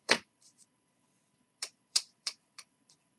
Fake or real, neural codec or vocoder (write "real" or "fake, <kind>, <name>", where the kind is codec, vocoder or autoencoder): fake, vocoder, Vocos